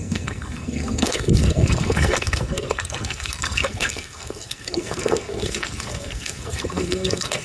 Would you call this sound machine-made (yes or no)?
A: yes